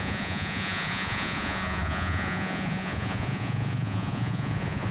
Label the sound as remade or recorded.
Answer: remade